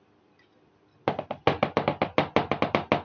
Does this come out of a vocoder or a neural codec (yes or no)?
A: no